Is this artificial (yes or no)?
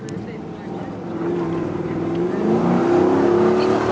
no